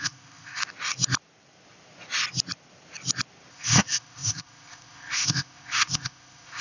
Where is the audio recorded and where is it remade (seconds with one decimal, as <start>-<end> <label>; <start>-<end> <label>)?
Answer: 0.0-0.6 remade; 0.6-3.5 recorded; 3.5-6.6 remade